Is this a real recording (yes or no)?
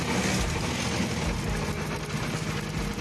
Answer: yes